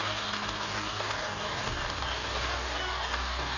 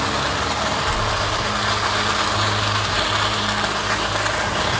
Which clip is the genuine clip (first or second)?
second